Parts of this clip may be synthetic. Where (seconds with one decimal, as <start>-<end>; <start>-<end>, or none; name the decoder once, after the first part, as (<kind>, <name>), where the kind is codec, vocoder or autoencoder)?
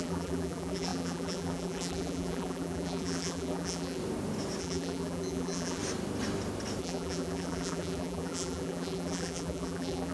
0.0-4.0 (vocoder, BigVGAN v2); 4.6-5.8; 6.8-10.1